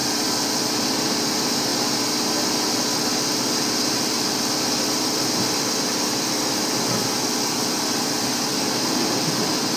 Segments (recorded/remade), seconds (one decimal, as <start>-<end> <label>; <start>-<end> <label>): 0.0-1.7 remade; 1.7-2.7 recorded; 2.7-9.8 remade